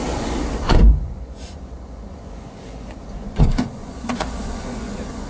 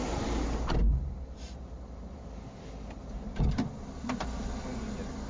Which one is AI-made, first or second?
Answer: first